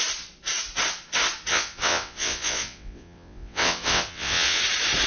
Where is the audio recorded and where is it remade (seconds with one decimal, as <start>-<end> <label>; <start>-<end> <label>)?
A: 0.0-1.5 recorded; 1.5-4.6 remade; 4.6-5.1 recorded